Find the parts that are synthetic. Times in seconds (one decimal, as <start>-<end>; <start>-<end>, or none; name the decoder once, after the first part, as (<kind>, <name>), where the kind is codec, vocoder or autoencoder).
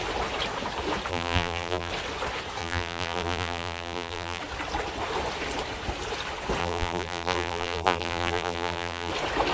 1.1-1.9 (vocoder, BigVGAN v2); 2.6-4.4; 6.6-9.1